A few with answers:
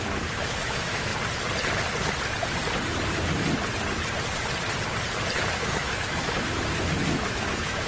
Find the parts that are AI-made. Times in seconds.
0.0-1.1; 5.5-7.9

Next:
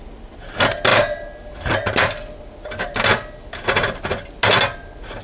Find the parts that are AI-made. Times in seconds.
none